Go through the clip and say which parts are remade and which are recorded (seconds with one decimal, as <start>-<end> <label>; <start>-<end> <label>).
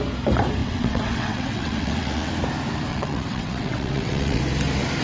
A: 0.0-0.6 recorded; 0.6-2.3 remade; 2.3-2.9 recorded; 2.9-4.4 remade; 4.4-5.0 recorded